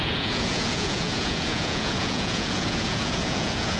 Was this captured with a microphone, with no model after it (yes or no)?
no